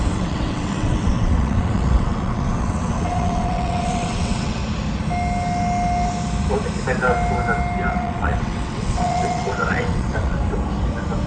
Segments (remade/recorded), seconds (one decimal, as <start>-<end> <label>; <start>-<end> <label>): 0.0-4.6 remade; 4.6-7.9 recorded; 7.9-10.4 remade; 10.4-11.3 recorded